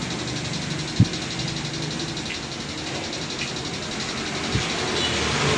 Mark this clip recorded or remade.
recorded